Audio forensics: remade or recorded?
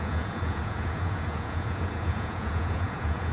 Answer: remade